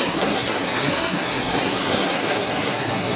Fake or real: fake